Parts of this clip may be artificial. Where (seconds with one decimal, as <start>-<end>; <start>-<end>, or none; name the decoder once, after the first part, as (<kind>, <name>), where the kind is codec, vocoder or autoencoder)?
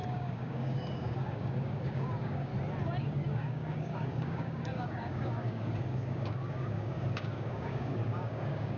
0.0-2.5 (codec, DAC); 3.0-8.8